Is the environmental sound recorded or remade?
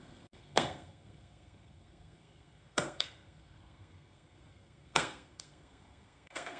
remade